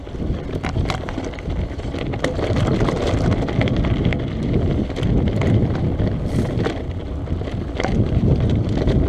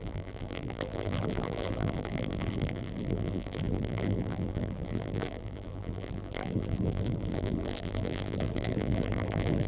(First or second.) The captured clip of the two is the first